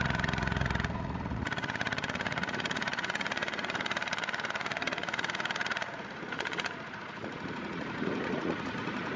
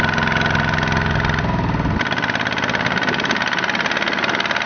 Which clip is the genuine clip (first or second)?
second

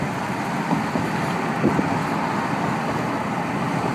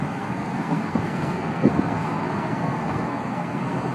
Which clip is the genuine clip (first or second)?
first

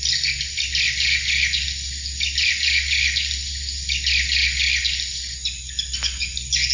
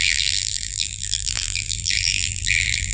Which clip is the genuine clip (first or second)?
first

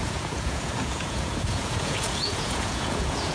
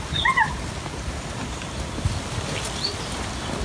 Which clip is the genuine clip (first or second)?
second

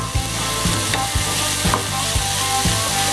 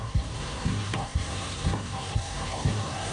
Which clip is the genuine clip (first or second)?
first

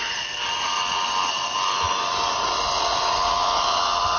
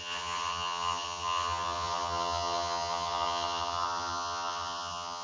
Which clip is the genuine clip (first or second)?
first